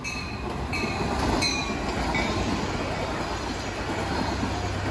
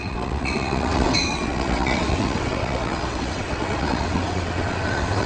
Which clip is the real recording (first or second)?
first